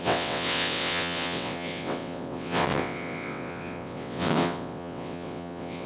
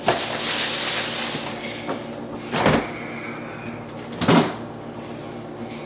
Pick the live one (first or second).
second